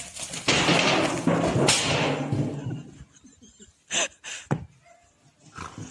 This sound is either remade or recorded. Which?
recorded